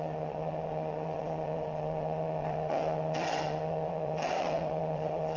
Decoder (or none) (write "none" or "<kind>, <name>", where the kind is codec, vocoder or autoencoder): vocoder, WaveNeXt